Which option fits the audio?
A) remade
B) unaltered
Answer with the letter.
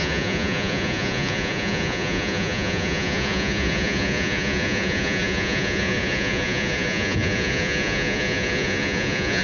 A